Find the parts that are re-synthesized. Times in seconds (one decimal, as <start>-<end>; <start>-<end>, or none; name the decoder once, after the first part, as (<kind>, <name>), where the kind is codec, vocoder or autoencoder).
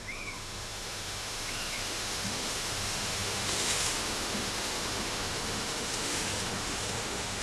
0.0-7.4 (autoencoder, DAC-VAE)